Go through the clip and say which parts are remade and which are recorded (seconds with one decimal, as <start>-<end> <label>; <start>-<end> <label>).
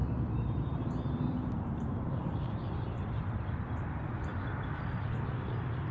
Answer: 0.0-0.8 remade; 0.8-1.3 recorded; 1.3-3.7 remade; 3.7-5.9 recorded